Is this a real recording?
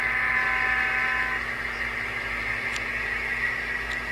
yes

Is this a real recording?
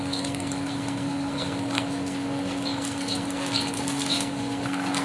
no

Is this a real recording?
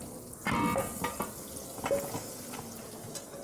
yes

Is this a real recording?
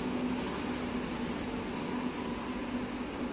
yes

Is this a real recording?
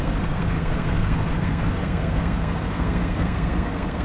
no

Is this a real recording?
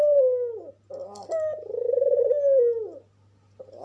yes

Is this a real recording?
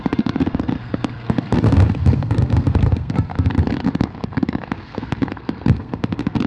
no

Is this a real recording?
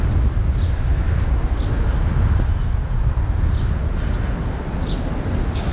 yes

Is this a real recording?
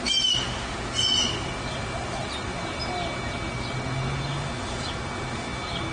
yes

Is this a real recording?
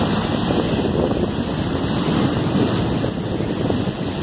yes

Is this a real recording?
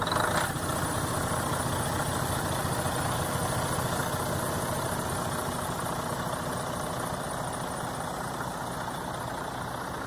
yes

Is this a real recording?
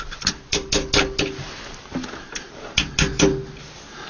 yes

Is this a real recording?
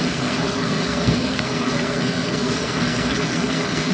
no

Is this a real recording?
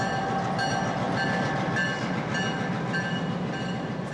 yes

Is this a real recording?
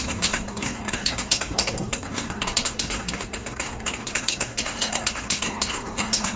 no